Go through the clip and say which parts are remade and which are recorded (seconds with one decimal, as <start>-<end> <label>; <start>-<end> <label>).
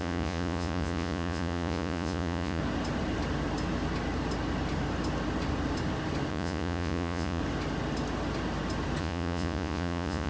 0.0-2.6 remade; 2.6-6.3 recorded; 6.3-7.4 remade; 7.4-9.0 recorded; 9.0-10.3 remade